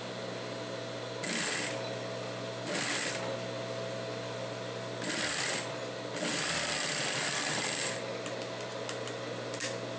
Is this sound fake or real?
real